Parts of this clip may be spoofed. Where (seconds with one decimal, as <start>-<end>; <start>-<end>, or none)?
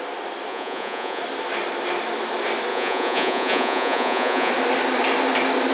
0.5-1.2; 2.7-4.5